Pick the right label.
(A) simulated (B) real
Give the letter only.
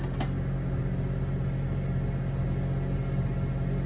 B